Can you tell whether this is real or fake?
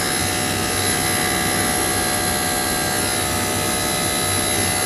real